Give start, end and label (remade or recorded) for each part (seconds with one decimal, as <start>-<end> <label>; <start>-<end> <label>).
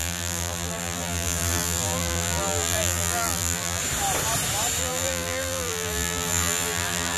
0.0-3.8 remade; 3.8-4.8 recorded; 4.8-7.2 remade